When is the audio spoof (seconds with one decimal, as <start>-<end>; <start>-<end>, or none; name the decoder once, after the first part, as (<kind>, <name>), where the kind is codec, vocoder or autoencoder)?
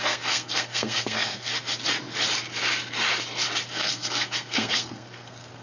0.0-1.5 (codec, SNAC); 3.7-5.6